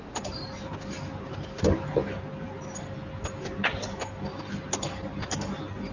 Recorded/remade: recorded